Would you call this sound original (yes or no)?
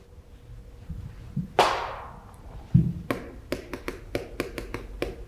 yes